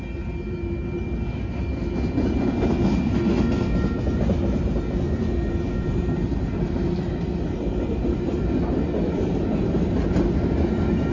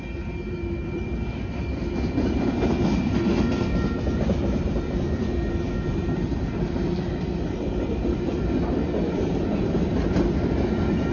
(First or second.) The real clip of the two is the first